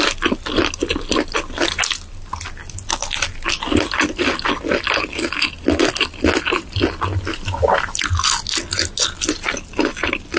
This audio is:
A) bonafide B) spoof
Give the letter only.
A